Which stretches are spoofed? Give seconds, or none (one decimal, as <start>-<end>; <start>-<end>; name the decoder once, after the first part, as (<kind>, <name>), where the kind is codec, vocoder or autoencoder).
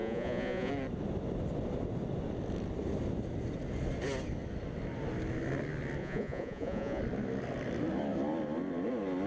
0.0-0.7 (vocoder, Vocos); 6.0-7.0